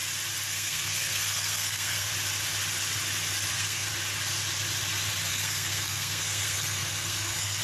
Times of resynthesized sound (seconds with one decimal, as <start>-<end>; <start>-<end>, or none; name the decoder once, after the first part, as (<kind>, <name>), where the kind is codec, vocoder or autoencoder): 0.5-2.1 (codec, SNAC); 3.5-3.9; 5.3-7.6